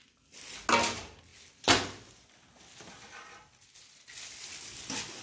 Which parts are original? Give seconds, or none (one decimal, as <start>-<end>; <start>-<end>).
0.0-5.2